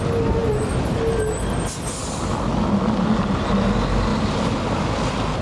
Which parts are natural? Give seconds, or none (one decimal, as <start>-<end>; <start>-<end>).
0.0-5.4